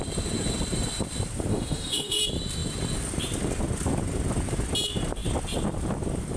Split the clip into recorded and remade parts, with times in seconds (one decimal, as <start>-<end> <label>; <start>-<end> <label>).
0.0-1.5 recorded; 1.5-2.2 remade; 2.2-6.4 recorded